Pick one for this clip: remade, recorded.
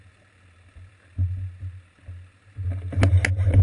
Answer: recorded